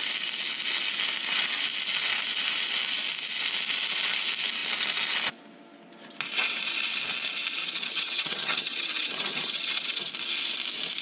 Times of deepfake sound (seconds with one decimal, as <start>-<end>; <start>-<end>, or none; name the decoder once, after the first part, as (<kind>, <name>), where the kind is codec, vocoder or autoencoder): 7.6-10.1 (vocoder, HiFi-GAN)